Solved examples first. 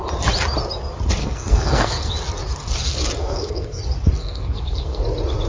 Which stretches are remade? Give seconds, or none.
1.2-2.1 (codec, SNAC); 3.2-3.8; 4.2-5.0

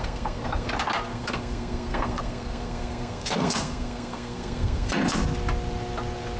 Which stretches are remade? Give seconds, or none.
0.0-0.7 (codec, SNAC); 1.1-4.9

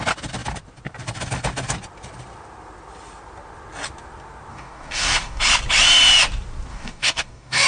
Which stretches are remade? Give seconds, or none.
4.5-5.4 (codec, DAC); 6.7-7.7

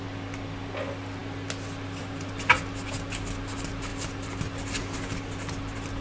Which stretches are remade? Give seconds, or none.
none

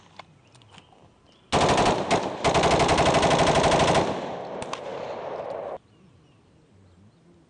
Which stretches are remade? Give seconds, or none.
2.9-3.9 (vocoder, BigVGAN v2)

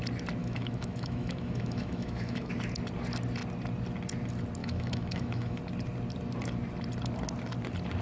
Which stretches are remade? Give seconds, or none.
0.4-2.5 (autoencoder, DAC-VAE); 4.6-5.6

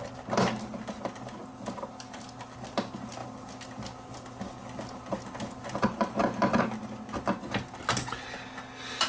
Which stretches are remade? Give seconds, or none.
none

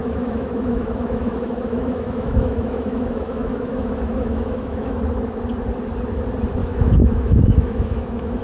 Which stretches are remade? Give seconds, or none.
0.0-5.0 (autoencoder, DAC-VAE); 6.6-8.4